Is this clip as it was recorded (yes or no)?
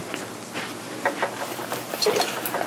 yes